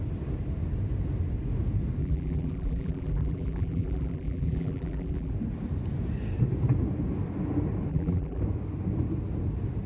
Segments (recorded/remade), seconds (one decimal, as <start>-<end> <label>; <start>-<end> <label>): 0.0-2.0 recorded; 2.0-5.3 remade; 5.3-7.9 recorded; 7.9-8.4 remade; 8.4-9.9 recorded